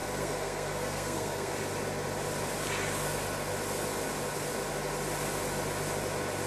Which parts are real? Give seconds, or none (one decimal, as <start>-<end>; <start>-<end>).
1.5-6.5